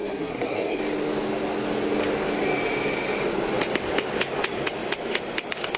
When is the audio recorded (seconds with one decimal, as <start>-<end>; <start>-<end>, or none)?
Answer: 0.8-5.8